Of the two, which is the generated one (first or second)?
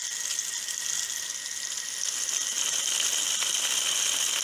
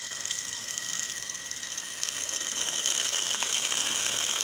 second